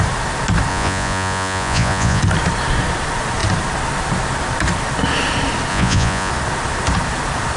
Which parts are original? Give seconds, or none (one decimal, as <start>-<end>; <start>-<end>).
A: 0.0-0.7; 2.2-5.7; 6.3-7.6